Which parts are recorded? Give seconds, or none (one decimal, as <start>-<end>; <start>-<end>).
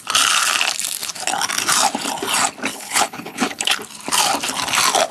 0.0-2.7; 3.8-5.1